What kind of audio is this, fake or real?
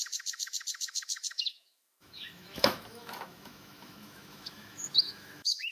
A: fake